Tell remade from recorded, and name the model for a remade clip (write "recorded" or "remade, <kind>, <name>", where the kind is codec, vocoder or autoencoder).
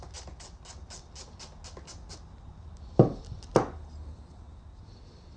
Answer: recorded